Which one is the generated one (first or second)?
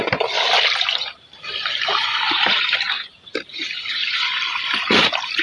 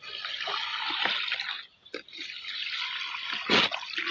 first